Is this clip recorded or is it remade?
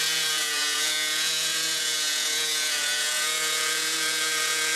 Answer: remade